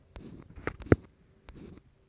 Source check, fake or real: real